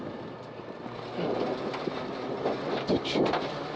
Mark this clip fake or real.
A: real